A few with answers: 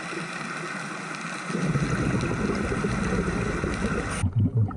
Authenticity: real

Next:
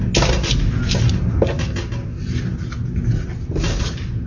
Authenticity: real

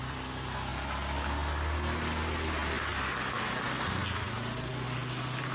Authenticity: real